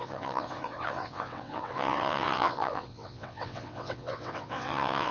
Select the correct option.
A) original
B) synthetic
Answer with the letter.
B